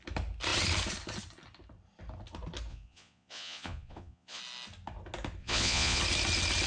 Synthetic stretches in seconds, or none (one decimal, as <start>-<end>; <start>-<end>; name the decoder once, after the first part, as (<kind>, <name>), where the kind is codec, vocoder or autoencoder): 2.7-4.4 (vocoder, Vocos); 5.4-6.0

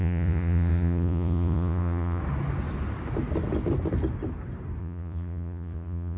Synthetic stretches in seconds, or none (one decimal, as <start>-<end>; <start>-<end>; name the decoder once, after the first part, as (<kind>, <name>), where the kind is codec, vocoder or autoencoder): 0.0-2.2 (vocoder, Vocos); 4.8-6.2

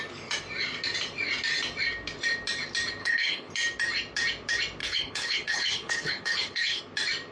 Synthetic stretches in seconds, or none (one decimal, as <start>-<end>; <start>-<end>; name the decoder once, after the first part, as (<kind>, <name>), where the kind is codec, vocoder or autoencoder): 3.0-3.5 (codec, HILCodec); 4.8-6.8